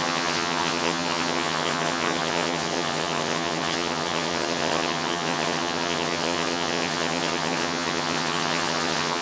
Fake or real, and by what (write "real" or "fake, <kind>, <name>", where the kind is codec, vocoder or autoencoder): fake, vocoder, HiFi-GAN